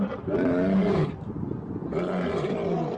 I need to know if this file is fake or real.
real